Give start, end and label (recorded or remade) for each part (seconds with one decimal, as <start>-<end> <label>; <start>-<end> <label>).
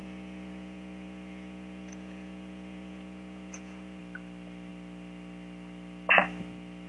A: 0.0-4.0 remade; 4.0-6.9 recorded